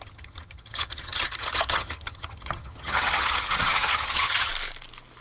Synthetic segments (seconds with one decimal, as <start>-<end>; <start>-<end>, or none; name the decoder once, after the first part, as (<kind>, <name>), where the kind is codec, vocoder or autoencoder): 0.0-4.5 (vocoder, HiFi-GAN)

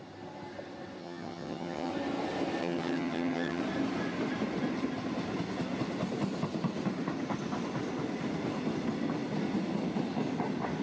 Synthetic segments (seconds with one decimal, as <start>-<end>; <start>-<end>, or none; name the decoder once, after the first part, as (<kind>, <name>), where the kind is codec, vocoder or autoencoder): 1.0-1.9 (vocoder, HiFi-GAN); 2.6-3.6

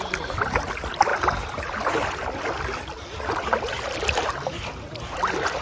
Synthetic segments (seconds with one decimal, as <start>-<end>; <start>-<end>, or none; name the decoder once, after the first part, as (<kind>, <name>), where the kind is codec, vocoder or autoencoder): none

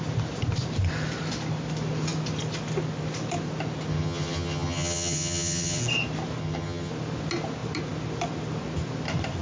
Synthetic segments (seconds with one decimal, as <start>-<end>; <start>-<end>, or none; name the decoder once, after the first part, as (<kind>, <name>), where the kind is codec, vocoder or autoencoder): 3.9-5.8 (vocoder, HiFi-GAN); 6.4-6.9

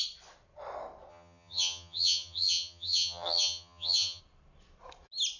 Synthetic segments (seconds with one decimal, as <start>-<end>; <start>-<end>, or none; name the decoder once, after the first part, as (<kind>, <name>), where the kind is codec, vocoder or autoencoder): 1.1-4.2 (vocoder, HiFi-GAN)

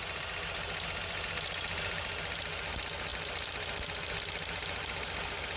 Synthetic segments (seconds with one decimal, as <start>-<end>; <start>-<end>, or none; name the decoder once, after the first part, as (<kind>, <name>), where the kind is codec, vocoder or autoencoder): none

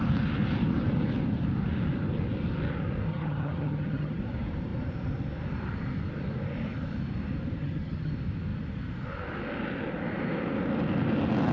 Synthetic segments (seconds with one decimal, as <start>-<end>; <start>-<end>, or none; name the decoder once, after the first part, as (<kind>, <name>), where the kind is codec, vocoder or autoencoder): 3.1-4.2 (vocoder, HiFi-GAN); 7.6-8.1